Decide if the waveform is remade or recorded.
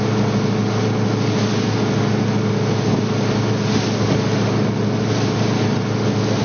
recorded